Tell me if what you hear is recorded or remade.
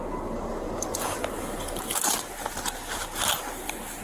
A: recorded